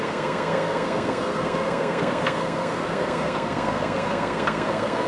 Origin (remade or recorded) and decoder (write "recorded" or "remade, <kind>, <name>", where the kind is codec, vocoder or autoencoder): remade, codec, SNAC